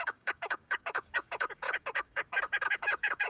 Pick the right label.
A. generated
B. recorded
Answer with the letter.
A